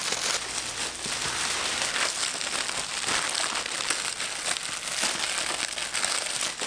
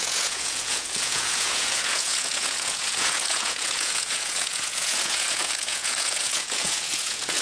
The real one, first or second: first